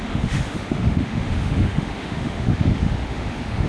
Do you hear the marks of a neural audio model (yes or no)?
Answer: yes